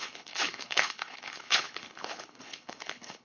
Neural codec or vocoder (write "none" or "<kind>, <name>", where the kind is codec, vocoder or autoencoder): codec, HILCodec